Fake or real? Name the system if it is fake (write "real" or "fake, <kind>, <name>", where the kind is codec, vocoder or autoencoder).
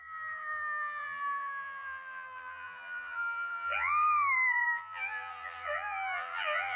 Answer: fake, vocoder, BigVGAN v2